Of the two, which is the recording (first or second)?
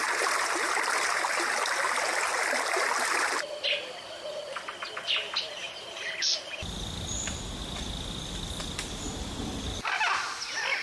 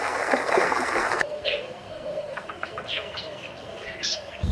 first